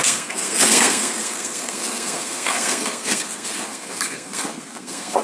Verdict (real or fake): fake